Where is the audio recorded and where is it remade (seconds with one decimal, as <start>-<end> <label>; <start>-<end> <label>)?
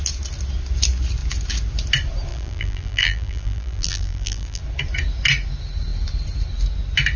0.0-2.3 recorded; 2.3-4.6 remade; 4.6-7.2 recorded